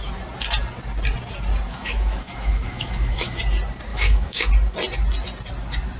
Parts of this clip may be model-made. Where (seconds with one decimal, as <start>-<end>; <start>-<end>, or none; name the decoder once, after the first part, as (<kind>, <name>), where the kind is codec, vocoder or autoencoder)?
1.7-3.4 (autoencoder, DAC-VAE); 3.9-4.5